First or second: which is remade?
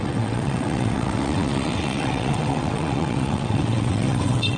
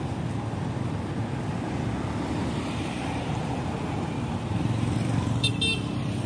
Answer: first